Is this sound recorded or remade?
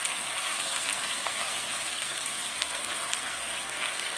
remade